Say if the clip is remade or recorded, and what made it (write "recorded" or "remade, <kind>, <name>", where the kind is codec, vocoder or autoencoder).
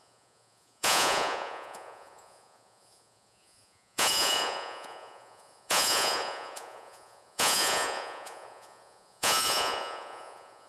remade, vocoder, Vocos